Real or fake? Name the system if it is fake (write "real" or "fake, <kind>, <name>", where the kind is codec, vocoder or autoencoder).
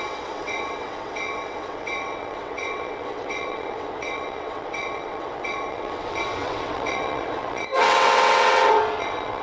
fake, vocoder, WaveNeXt